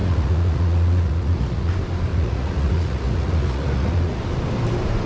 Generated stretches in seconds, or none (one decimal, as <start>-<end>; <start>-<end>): 0.0-1.7; 2.1-4.2